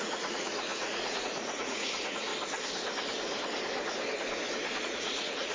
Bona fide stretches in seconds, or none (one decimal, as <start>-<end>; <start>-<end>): 2.3-4.8